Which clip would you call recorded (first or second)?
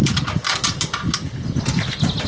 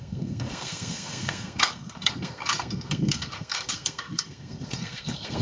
first